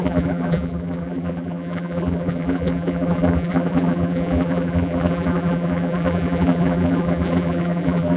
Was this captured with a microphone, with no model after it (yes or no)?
no